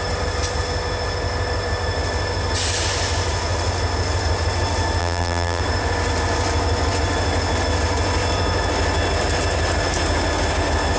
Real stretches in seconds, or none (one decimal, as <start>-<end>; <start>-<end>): 0.0-5.0; 5.6-11.0